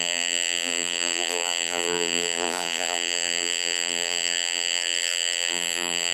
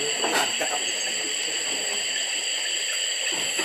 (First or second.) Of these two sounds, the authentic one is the second